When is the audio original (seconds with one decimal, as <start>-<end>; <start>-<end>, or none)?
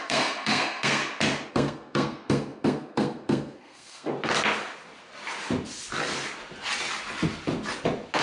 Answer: 1.0-1.5; 4.1-8.2